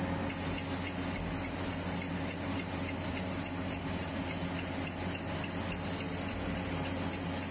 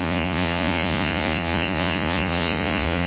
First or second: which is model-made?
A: second